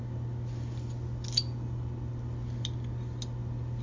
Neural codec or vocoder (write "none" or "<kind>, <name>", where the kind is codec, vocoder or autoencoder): none